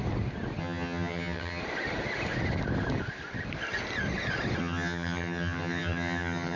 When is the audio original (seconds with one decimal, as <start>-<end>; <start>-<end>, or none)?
0.0-0.6; 1.6-4.6